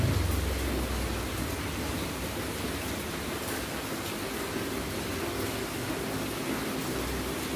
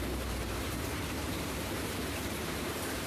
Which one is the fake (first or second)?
second